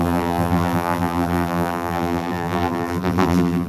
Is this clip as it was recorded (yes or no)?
no